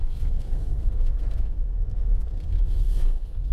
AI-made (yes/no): yes